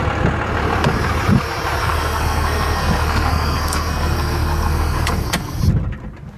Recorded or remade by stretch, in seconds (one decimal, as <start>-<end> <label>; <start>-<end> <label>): 0.0-1.8 recorded; 1.8-5.6 remade; 5.6-6.4 recorded